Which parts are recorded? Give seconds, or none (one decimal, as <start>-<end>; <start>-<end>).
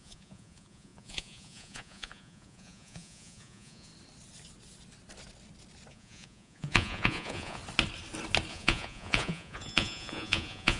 3.9-5.9; 7.6-8.5